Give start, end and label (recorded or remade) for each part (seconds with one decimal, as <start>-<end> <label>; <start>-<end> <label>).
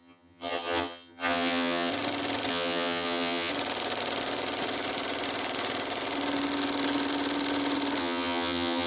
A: 0.0-1.9 remade; 1.9-2.5 recorded; 2.5-3.5 remade; 3.5-8.0 recorded; 8.0-8.9 remade